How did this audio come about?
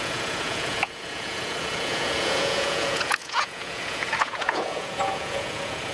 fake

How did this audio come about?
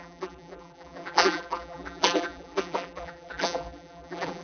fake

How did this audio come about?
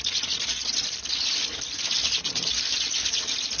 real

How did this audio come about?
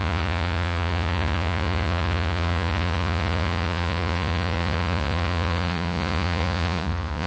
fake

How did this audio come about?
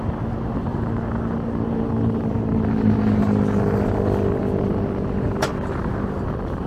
real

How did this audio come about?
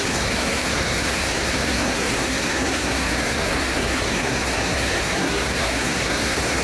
fake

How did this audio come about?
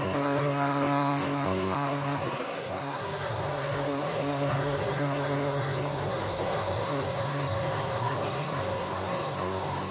fake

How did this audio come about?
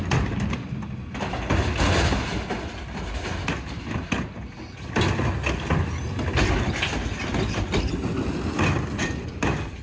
real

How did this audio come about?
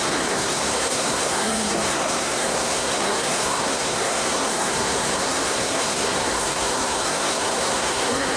fake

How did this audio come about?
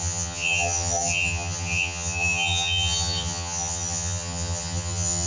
fake